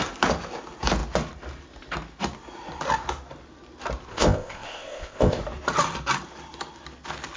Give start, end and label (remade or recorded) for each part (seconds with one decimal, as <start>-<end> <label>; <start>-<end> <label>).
0.0-4.1 recorded; 4.1-5.4 remade; 5.4-7.4 recorded